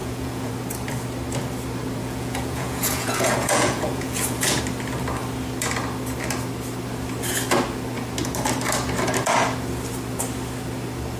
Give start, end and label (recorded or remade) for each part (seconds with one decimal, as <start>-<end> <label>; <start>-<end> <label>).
0.0-0.5 remade; 0.5-2.0 recorded; 2.0-4.6 remade; 4.6-11.2 recorded